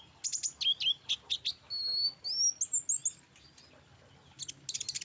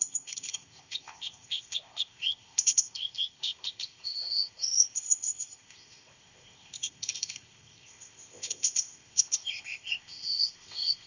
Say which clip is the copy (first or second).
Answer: second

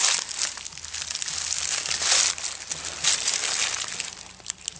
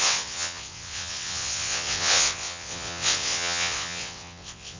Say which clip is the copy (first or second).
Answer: second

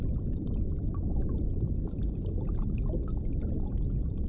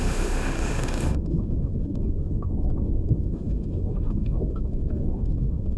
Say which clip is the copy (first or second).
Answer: second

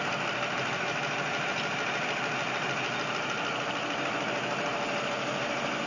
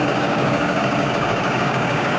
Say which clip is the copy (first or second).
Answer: second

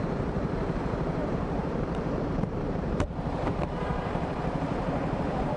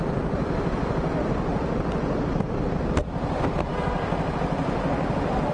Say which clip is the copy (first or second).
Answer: first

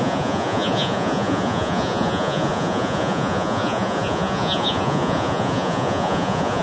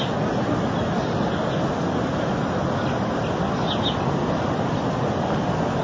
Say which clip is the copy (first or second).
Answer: first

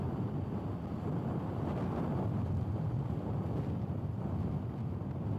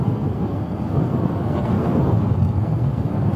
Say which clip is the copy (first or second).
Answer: second